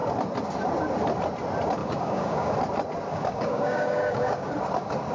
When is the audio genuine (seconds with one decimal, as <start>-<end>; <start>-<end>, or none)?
0.0-1.8; 2.5-3.1; 4.5-5.1